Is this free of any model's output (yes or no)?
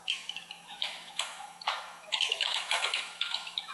no